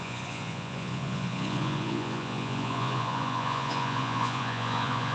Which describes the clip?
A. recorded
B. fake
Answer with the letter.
B